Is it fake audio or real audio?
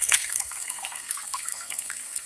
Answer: fake